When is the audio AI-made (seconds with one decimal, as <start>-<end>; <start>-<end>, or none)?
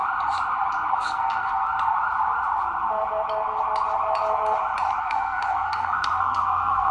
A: 0.9-1.7; 5.0-6.9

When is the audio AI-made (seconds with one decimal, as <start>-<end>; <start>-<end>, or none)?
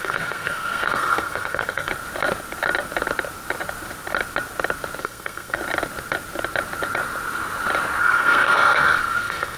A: 0.0-1.9; 5.0-5.6; 8.0-9.6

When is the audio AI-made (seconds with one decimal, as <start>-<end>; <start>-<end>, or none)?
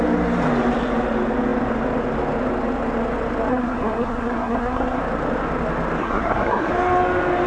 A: 3.5-5.0; 6.0-6.7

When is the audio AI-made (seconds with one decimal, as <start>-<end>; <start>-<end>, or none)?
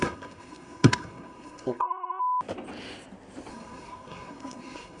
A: 0.0-2.2; 3.5-5.0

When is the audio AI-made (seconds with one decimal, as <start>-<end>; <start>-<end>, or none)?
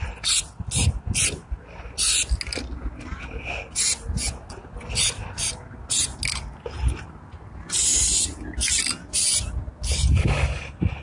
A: none